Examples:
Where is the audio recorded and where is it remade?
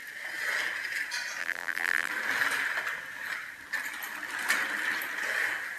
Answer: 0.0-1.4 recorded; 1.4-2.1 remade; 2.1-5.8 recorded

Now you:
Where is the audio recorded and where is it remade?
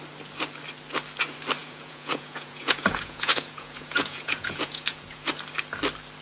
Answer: 0.0-1.6 recorded; 1.6-5.3 remade; 5.3-6.2 recorded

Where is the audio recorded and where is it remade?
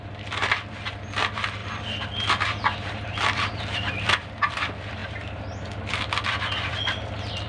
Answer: 0.0-7.5 recorded